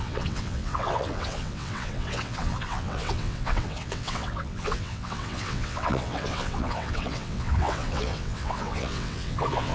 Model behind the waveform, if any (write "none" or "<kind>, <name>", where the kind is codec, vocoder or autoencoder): vocoder, WaveNeXt